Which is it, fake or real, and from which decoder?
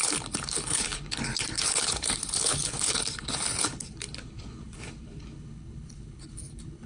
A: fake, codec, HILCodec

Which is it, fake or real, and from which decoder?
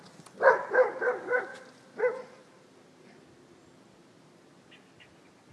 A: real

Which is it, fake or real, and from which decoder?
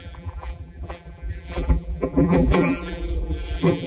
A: fake, vocoder, BigVGAN v2